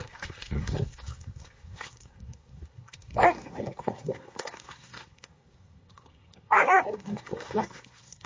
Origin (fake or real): fake